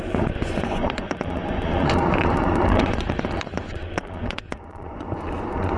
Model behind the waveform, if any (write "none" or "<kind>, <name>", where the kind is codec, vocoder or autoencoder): vocoder, Vocos